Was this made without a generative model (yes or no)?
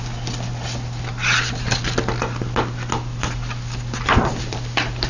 yes